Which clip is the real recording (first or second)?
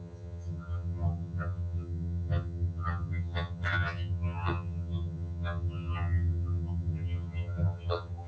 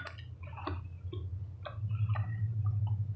second